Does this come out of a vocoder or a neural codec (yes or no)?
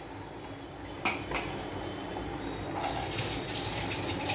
no